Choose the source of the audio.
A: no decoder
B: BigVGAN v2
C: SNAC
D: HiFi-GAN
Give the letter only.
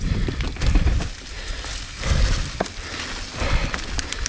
A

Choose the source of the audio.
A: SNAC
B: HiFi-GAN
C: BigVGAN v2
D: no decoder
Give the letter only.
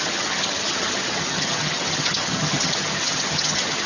B